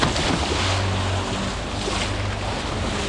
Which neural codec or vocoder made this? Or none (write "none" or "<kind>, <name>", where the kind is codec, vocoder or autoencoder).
none